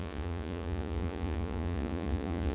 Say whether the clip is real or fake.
fake